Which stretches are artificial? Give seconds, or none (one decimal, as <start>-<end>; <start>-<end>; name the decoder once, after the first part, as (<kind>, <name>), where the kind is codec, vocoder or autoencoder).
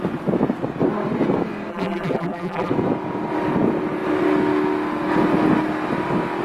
1.7-2.7 (vocoder, BigVGAN v2)